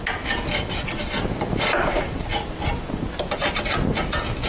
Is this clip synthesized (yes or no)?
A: no